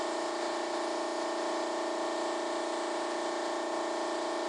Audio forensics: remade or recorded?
recorded